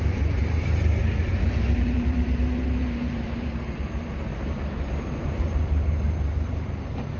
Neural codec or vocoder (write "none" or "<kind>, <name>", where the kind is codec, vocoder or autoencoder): vocoder, BigVGAN v2